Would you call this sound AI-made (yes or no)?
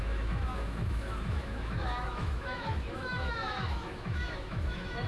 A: yes